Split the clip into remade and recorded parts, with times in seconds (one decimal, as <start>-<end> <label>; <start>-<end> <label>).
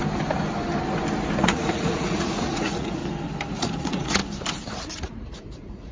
0.0-1.4 recorded; 1.4-3.0 remade; 3.0-3.5 recorded; 3.5-4.2 remade; 4.2-5.0 recorded; 5.0-5.9 remade